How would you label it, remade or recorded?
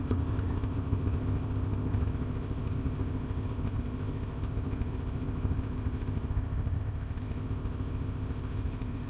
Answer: remade